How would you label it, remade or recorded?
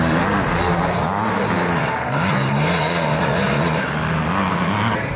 recorded